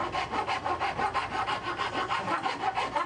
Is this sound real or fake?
real